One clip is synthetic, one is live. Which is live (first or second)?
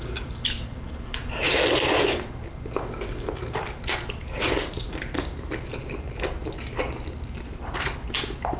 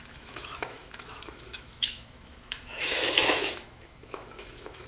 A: first